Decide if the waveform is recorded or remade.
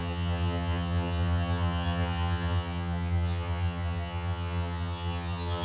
remade